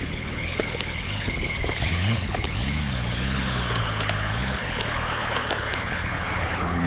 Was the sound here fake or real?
fake